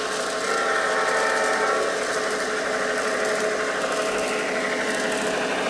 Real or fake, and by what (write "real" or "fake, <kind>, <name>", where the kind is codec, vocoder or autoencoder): real